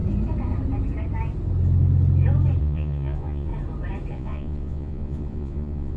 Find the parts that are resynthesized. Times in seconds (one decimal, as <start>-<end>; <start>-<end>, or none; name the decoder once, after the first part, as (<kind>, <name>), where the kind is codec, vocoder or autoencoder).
2.6-3.5 (vocoder, Vocos); 4.1-6.0